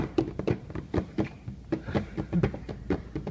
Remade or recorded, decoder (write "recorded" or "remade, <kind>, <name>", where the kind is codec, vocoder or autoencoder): remade, vocoder, BigVGAN v2